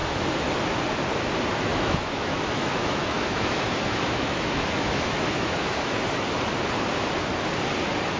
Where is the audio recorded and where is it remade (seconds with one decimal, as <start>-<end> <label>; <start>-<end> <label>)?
0.0-1.7 recorded; 1.7-6.0 remade; 6.0-8.2 recorded